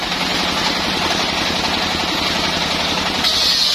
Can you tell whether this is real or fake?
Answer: real